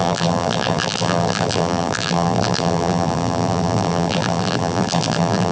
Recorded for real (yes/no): no